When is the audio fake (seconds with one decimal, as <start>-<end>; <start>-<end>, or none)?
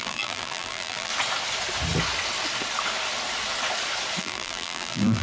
0.0-1.1; 4.2-5.2